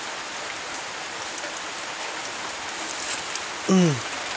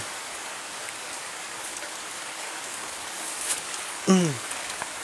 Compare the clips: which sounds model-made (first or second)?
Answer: second